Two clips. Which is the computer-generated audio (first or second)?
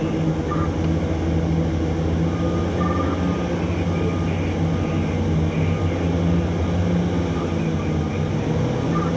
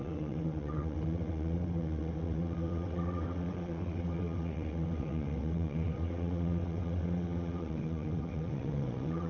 second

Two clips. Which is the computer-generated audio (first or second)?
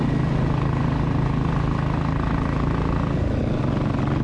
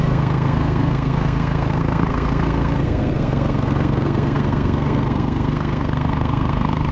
second